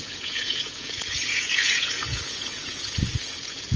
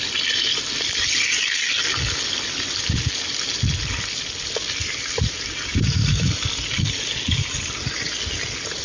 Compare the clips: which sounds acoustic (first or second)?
second